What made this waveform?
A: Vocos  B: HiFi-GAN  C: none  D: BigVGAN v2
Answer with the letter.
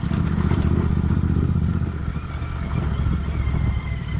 C